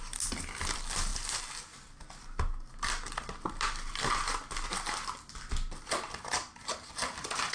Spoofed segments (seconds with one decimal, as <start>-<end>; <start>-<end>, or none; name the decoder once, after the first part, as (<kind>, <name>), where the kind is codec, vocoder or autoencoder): none